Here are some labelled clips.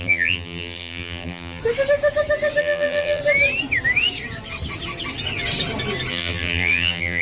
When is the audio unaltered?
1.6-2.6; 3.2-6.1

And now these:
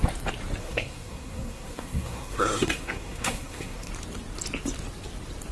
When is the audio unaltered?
0.0-0.6; 3.9-5.5

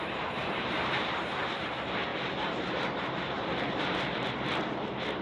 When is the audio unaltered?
2.1-2.6

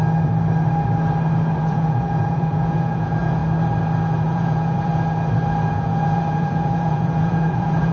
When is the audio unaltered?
0.0-1.6; 3.4-4.2; 4.9-5.7

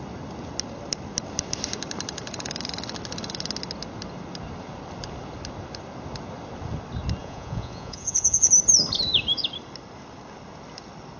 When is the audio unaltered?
0.0-7.2; 8.5-11.2